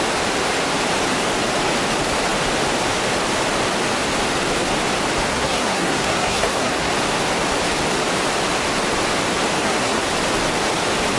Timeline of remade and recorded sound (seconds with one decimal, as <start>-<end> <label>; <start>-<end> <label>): 0.0-5.3 recorded; 5.3-6.9 remade; 6.9-9.6 recorded; 9.6-10.1 remade; 10.1-11.2 recorded